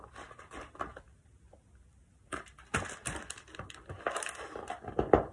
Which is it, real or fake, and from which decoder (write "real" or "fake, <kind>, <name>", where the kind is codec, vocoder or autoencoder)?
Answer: real